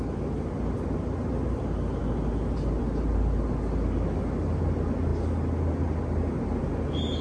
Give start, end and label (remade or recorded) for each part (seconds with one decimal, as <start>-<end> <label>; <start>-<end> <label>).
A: 0.0-7.2 recorded